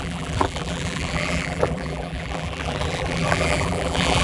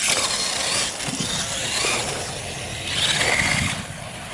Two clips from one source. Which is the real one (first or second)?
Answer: second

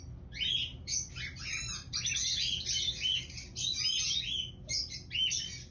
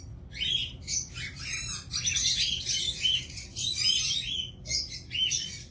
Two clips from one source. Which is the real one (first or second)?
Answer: first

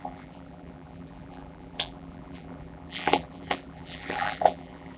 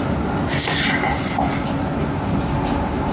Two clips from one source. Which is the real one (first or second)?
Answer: second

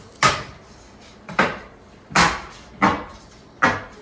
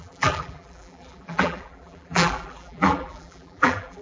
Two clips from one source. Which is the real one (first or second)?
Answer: first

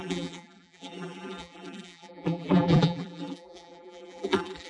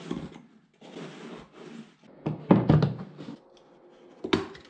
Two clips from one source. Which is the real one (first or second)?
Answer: second